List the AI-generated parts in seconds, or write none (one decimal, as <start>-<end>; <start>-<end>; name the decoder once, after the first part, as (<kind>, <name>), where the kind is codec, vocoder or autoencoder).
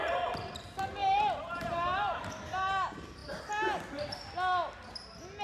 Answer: 1.0-2.4 (vocoder, BigVGAN v2)